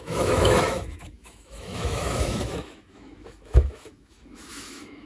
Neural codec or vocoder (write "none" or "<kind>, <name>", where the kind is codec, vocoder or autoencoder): autoencoder, DAC-VAE